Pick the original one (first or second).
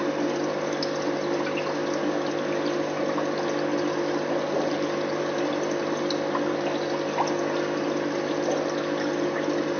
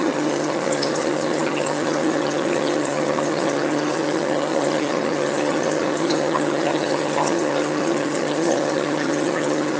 first